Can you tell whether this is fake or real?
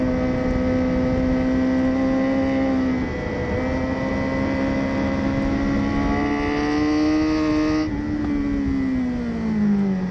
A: real